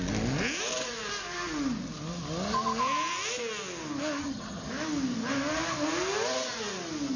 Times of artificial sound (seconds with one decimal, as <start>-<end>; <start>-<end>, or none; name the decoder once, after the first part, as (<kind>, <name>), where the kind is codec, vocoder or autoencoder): 4.2-4.7 (vocoder, HiFi-GAN)